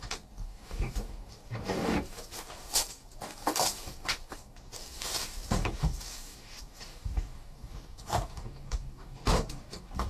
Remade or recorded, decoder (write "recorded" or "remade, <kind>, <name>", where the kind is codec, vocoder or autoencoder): remade, codec, DAC